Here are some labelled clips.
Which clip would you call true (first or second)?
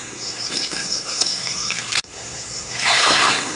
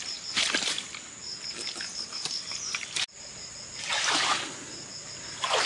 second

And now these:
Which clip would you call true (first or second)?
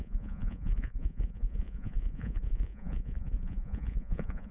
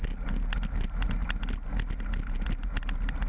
second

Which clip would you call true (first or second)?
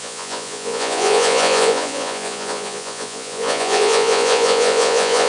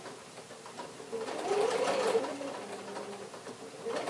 second